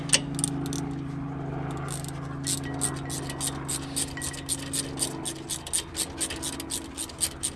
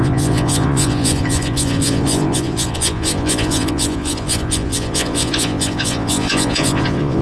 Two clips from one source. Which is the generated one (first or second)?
second